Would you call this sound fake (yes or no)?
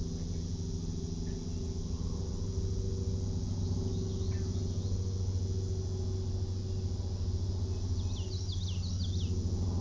no